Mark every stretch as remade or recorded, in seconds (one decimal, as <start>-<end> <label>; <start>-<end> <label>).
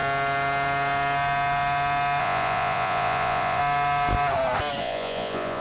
0.0-2.2 recorded; 2.2-3.6 remade; 3.6-4.8 recorded; 4.8-5.6 remade